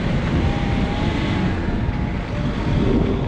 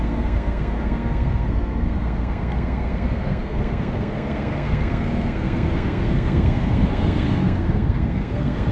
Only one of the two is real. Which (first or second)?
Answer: first